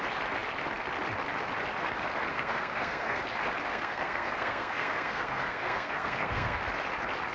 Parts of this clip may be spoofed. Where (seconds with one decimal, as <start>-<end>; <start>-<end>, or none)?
2.3-3.2; 3.7-6.6